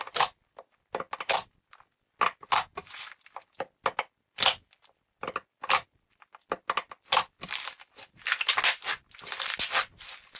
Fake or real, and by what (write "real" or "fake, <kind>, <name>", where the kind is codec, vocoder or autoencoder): real